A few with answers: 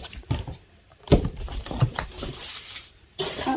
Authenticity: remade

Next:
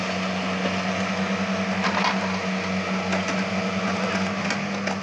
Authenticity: recorded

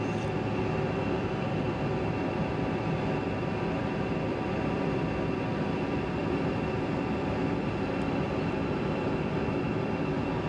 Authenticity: remade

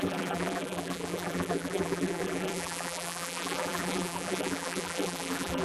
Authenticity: remade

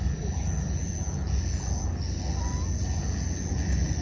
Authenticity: recorded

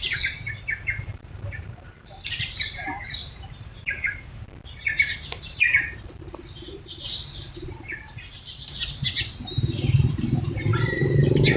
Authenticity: remade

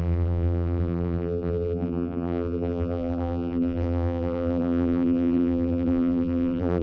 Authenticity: remade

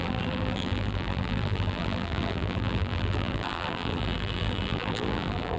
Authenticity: remade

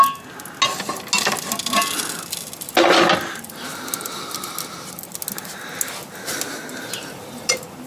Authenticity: recorded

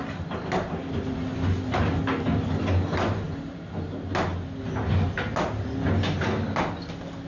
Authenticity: recorded